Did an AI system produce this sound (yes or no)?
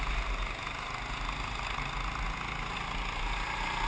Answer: no